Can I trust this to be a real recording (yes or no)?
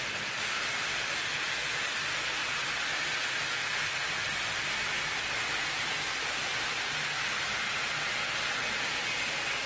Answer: yes